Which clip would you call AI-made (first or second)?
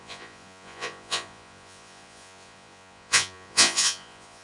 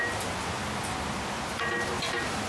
first